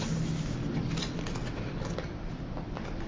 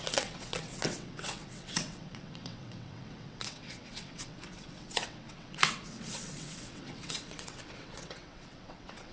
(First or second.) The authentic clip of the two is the first